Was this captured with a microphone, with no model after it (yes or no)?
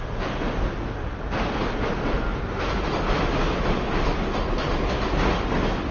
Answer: yes